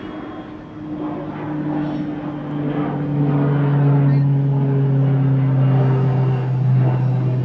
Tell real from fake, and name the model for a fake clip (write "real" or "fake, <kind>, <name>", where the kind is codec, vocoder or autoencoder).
real